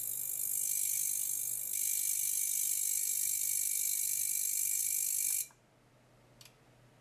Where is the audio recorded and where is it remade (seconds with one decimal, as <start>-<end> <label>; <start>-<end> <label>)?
0.0-7.0 recorded